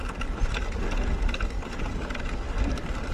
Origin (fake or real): real